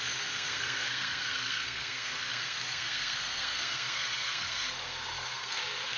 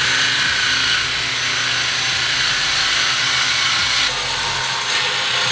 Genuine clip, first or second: second